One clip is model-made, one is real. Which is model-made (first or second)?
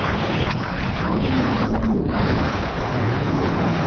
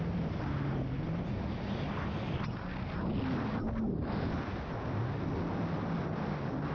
first